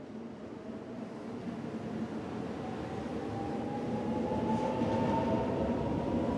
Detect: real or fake real